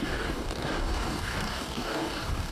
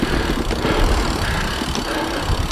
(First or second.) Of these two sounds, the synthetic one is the first